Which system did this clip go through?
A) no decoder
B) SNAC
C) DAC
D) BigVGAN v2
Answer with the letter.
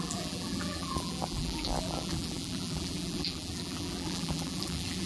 D